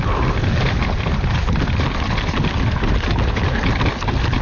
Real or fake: real